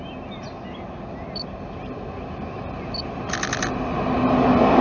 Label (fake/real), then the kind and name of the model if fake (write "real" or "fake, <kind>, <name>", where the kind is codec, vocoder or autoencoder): real